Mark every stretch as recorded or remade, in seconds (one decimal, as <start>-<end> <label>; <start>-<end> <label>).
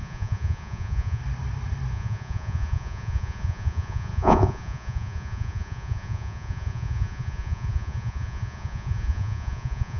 0.0-1.2 remade; 1.2-1.9 recorded; 1.9-10.0 remade